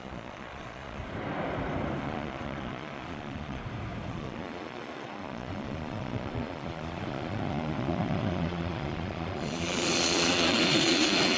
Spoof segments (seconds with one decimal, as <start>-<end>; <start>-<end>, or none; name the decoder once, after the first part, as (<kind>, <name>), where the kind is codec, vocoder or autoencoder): 0.0-1.0 (vocoder, Vocos); 2.0-3.6; 4.1-11.4